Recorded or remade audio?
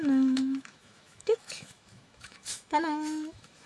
remade